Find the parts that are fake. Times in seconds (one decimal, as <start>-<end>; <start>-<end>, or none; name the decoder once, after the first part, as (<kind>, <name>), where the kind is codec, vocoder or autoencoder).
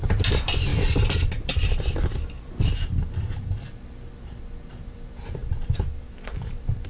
0.7-3.6 (vocoder, BigVGAN v2); 5.4-6.9